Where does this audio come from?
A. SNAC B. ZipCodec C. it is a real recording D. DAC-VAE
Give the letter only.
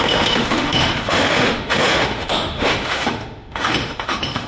D